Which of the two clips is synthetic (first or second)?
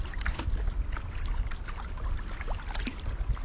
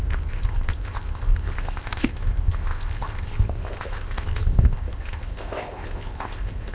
second